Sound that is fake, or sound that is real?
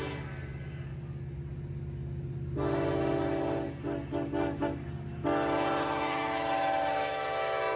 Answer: real